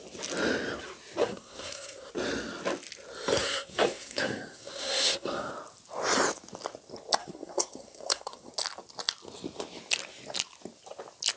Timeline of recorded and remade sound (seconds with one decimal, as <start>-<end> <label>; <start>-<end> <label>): 0.0-1.2 recorded; 1.2-2.1 remade; 2.1-3.4 recorded; 3.4-5.5 remade; 5.5-7.2 recorded; 7.2-8.5 remade; 8.5-11.4 recorded